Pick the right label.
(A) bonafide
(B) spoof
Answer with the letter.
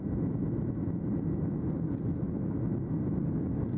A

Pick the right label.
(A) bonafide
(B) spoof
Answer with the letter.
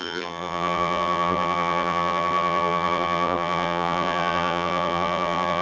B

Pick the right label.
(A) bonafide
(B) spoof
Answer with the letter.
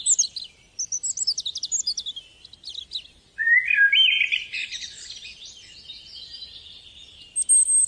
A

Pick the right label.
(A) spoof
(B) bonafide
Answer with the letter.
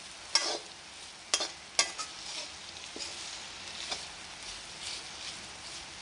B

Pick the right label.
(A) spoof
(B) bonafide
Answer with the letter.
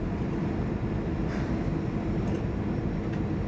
B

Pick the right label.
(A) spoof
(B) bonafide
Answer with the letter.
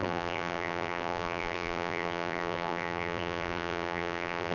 A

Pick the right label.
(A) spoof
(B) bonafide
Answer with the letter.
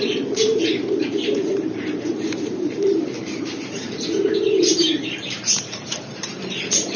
A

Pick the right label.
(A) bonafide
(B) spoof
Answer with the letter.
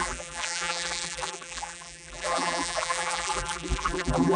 B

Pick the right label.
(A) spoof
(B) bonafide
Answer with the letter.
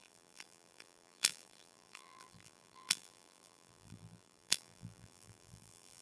A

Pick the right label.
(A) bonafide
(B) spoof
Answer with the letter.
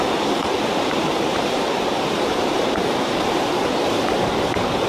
B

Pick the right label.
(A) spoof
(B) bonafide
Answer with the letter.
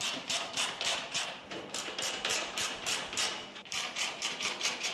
A